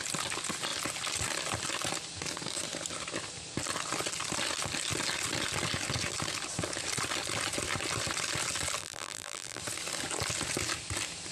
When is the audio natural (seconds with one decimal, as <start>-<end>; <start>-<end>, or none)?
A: 0.0-8.8; 9.6-11.3